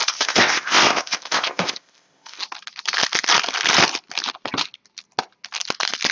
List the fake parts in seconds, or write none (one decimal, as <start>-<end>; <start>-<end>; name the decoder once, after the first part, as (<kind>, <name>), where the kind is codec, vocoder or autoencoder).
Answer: 0.0-2.4 (codec, ZipCodec)